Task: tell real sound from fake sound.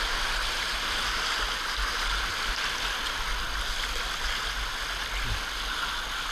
real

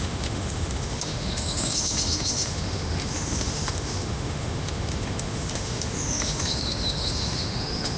fake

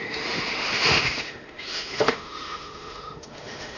fake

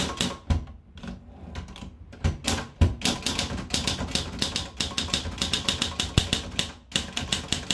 real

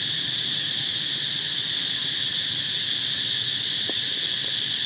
real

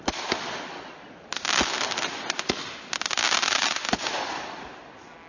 real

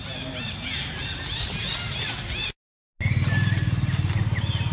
real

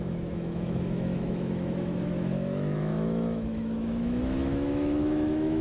fake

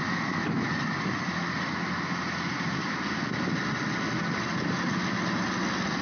real